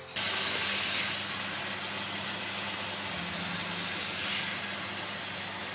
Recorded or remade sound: recorded